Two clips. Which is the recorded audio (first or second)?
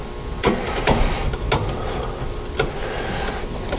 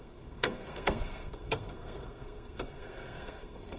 first